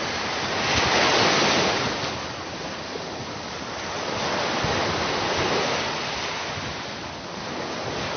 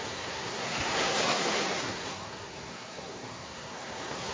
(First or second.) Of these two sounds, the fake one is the second